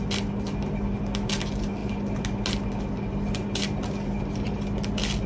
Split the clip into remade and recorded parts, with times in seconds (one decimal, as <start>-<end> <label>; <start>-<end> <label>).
0.0-5.3 recorded

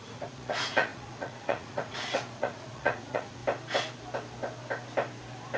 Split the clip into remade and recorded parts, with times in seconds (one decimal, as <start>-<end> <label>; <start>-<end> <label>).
0.0-3.4 remade; 3.4-5.6 recorded

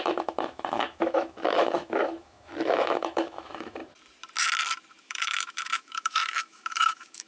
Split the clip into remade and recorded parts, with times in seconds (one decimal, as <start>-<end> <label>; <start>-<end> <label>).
0.0-3.8 remade; 3.8-5.0 recorded; 5.0-7.3 remade

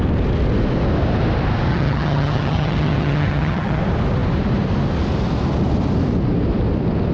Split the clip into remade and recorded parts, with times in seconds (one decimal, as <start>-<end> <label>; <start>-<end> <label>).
0.0-1.7 recorded; 1.7-3.8 remade; 3.8-7.1 recorded

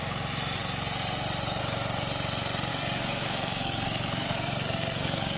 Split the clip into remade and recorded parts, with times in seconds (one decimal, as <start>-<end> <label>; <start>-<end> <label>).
0.0-2.7 recorded; 2.7-5.4 remade